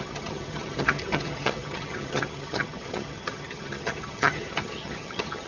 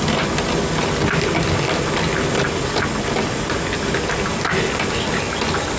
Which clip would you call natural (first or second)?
second